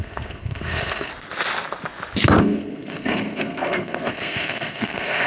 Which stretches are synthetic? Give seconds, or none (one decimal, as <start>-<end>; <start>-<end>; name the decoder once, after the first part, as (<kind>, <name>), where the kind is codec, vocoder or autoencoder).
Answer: 0.0-1.1 (codec, SNAC); 2.4-5.3